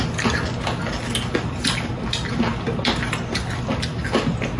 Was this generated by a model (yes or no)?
no